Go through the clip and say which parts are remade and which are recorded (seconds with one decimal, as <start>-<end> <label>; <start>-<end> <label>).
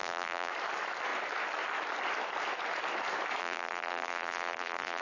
0.0-0.5 remade; 0.5-3.4 recorded; 3.4-5.0 remade